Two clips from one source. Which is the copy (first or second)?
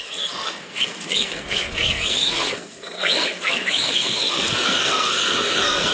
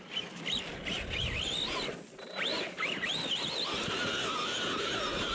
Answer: first